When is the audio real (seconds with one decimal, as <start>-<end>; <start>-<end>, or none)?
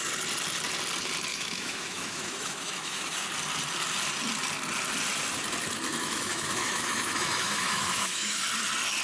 0.0-1.3; 3.2-6.0; 8.4-9.0